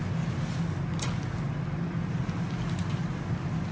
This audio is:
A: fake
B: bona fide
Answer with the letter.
B